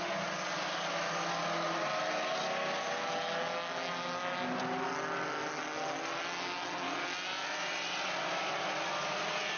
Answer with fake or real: real